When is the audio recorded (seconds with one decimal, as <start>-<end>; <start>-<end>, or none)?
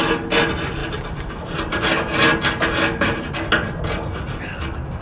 0.0-5.0